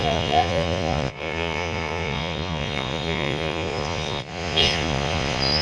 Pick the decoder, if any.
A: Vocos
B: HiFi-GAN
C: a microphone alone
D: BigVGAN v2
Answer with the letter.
A